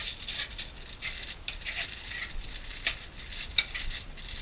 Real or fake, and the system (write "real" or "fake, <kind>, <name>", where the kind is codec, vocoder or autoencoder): real